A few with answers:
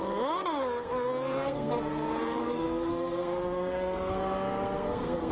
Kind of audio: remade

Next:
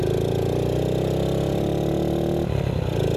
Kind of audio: recorded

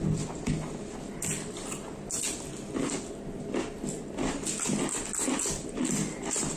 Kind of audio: recorded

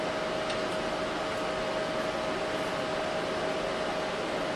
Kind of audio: recorded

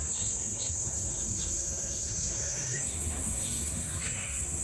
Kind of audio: remade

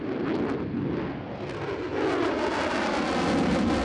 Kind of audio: recorded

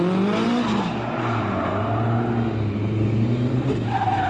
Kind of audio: recorded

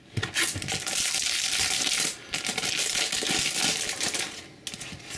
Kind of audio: recorded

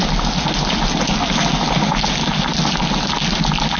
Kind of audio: recorded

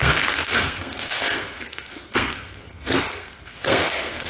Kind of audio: remade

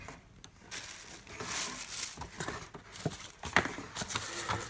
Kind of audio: recorded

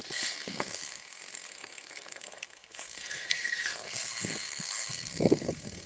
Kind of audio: remade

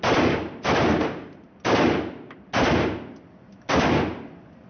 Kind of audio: recorded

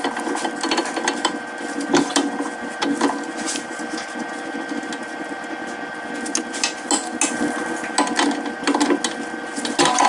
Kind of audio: recorded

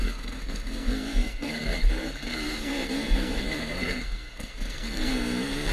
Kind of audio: remade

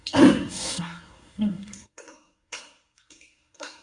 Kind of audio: remade